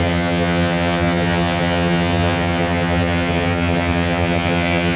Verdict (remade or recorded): remade